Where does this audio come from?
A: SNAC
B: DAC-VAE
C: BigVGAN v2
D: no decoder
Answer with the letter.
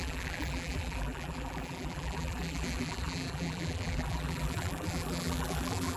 C